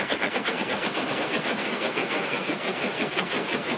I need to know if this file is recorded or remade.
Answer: remade